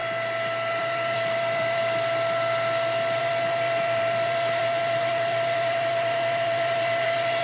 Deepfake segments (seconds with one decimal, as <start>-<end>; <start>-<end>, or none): 0.7-1.8; 3.2-7.4